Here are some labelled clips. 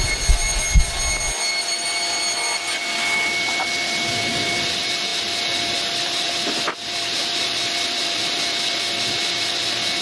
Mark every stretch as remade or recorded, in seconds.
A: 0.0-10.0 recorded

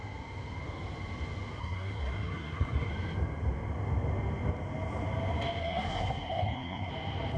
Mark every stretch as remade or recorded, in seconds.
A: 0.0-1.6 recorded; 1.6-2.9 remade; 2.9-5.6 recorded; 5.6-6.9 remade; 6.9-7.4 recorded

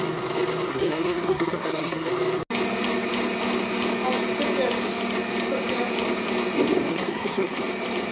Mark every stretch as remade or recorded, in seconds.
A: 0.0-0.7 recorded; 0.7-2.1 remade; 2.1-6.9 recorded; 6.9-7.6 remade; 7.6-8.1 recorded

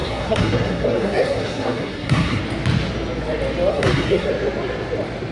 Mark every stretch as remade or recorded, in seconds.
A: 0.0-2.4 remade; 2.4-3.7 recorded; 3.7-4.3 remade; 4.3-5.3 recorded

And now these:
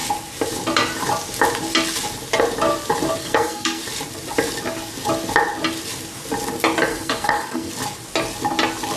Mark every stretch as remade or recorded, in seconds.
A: 0.0-3.2 recorded; 3.2-3.8 remade; 3.8-6.9 recorded; 6.9-7.7 remade; 7.7-9.0 recorded